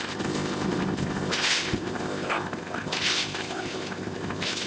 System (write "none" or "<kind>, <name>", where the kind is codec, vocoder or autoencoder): codec, ZipCodec